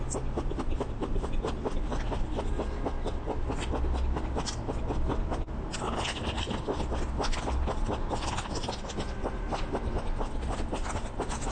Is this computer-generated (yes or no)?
no